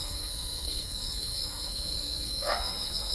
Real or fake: fake